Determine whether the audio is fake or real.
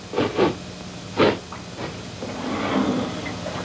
real